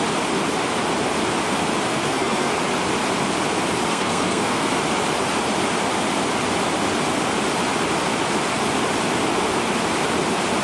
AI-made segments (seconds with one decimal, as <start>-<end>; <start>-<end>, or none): 1.9-2.5; 3.9-4.7